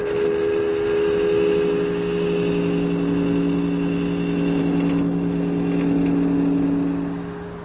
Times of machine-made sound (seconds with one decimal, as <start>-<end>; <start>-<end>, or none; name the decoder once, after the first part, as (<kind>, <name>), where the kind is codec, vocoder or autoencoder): none